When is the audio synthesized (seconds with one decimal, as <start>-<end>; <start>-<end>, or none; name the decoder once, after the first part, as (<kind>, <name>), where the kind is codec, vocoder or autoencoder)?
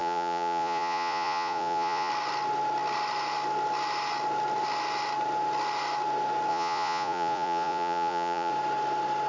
0.0-2.1 (vocoder, Vocos); 6.5-8.5